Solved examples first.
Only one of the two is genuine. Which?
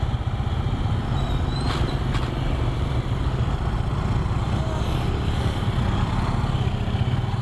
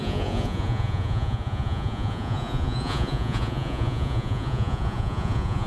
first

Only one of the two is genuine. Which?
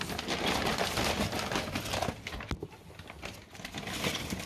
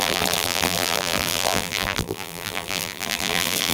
first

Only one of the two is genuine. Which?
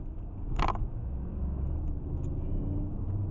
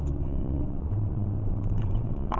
first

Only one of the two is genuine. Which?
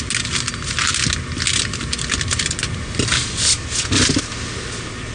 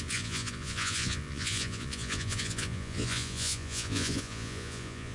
first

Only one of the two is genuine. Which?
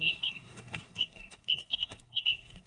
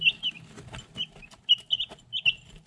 second